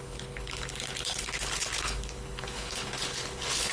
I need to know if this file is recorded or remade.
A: remade